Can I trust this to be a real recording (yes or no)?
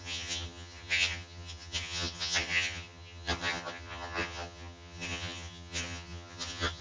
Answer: no